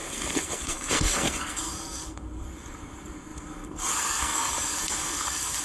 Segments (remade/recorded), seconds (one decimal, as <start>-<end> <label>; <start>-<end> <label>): 0.0-5.6 remade